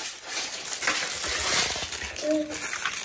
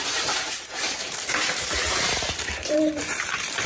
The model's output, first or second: second